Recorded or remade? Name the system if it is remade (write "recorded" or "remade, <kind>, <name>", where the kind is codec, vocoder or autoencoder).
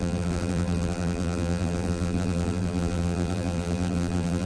remade, vocoder, BigVGAN v2